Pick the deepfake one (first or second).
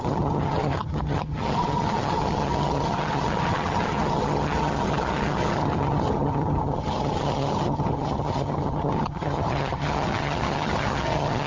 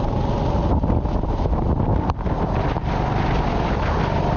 first